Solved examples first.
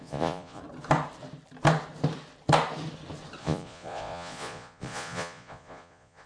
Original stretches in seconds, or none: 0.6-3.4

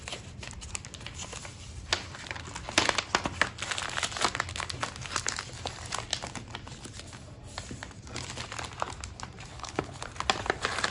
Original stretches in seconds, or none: 0.0-9.5; 10.0-10.9

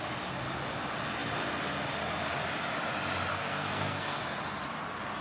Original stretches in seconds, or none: 0.0-3.3; 4.2-5.2

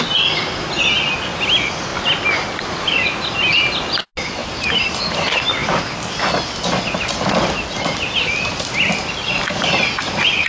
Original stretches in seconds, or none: 0.0-10.5

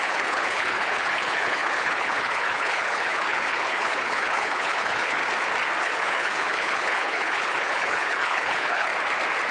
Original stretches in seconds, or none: 5.2-5.8; 8.9-9.5